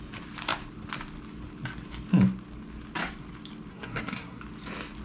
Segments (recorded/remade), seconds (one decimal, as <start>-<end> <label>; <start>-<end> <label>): 0.0-3.7 recorded; 3.7-4.4 remade; 4.4-5.0 recorded